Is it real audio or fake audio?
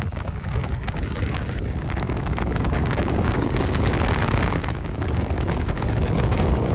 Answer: fake